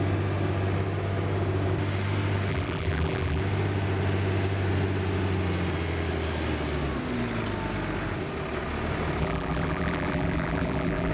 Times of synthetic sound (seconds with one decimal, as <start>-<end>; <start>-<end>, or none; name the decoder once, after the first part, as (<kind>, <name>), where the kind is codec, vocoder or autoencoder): 2.5-3.4 (vocoder, BigVGAN v2); 9.2-11.1